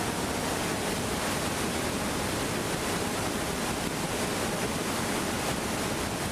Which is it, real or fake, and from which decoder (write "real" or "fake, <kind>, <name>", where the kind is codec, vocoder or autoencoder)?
real